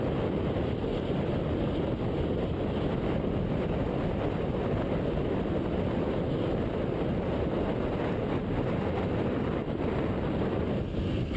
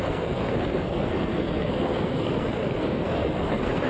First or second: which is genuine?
first